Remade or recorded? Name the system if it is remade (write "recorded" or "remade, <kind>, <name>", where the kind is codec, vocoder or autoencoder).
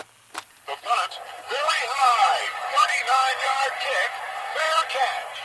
recorded